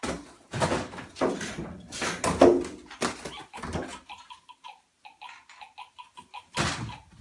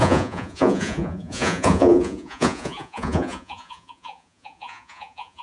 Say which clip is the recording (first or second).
first